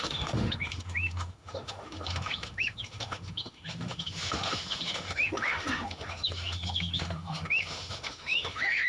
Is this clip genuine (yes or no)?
no